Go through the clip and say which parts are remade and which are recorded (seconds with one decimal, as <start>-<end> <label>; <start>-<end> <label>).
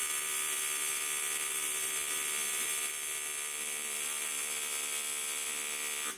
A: 0.0-2.9 remade; 2.9-6.2 recorded